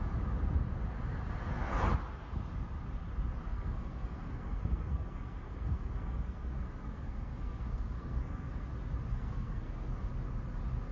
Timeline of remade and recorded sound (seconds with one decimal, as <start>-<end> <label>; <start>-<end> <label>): 0.0-3.4 recorded; 3.4-8.7 remade; 8.7-9.1 recorded; 9.1-10.1 remade; 10.1-10.9 recorded

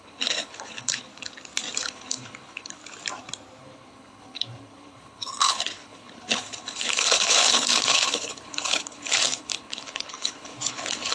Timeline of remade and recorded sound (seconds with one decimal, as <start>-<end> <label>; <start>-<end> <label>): 0.0-1.1 remade; 1.1-1.8 recorded; 1.8-2.8 remade; 2.8-3.6 recorded; 3.6-11.1 remade

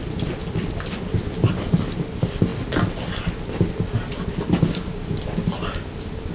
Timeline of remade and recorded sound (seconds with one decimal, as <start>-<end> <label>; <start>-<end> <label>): 0.0-6.3 recorded